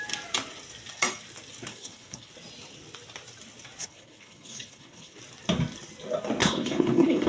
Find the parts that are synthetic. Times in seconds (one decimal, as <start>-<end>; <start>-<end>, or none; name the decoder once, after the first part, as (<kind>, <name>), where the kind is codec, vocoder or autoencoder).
1.7-2.3 (codec, HILCodec); 3.8-5.2; 6.4-7.3

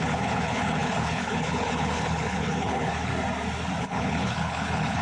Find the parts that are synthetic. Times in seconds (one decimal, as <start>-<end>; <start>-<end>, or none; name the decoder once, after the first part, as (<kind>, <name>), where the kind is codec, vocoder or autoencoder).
0.0-3.1 (codec, HILCodec); 3.8-5.0

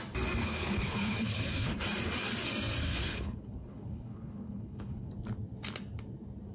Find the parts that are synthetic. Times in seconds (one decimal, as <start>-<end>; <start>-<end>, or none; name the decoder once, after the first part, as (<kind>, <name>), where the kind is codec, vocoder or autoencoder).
0.4-1.8 (codec, HILCodec); 2.8-5.1

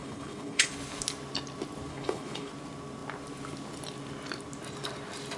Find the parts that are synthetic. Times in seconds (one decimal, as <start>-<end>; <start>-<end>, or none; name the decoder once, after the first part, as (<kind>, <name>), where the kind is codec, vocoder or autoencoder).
0.0-0.7 (codec, HILCodec); 1.9-2.5

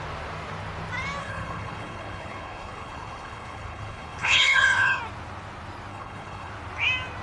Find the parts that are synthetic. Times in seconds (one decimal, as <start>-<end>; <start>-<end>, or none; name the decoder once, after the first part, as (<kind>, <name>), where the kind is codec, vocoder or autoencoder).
1.2-5.0 (codec, HILCodec); 5.9-6.5

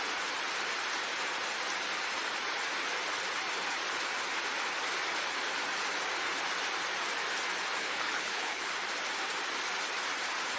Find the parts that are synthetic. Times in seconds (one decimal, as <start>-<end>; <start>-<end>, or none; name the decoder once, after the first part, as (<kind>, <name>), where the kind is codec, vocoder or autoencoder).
7.8-8.7 (codec, HILCodec)

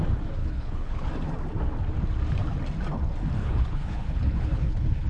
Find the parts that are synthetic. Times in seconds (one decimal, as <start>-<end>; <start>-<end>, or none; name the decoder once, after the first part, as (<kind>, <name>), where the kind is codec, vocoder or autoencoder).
0.4-1.1 (codec, HILCodec); 3.4-5.1

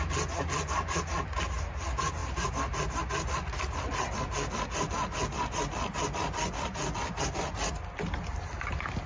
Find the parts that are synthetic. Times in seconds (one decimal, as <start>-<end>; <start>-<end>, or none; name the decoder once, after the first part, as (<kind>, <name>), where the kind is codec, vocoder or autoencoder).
none